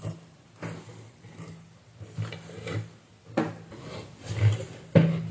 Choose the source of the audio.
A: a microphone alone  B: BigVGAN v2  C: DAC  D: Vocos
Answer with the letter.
A